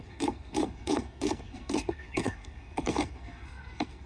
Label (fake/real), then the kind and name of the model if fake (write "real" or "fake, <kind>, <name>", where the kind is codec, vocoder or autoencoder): fake, codec, SNAC